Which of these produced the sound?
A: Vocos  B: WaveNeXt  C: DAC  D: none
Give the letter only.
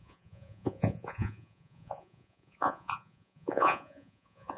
A